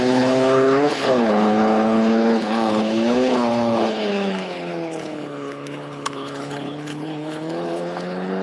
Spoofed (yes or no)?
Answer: yes